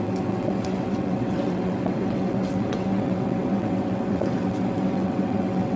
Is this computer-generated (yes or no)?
yes